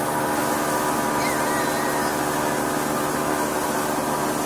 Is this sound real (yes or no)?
yes